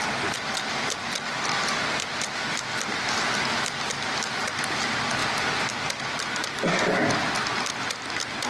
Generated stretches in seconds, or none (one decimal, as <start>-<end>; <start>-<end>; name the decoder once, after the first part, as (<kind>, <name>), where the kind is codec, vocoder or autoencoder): none